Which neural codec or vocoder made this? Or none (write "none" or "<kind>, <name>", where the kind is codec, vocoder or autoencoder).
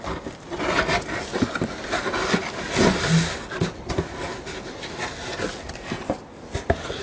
none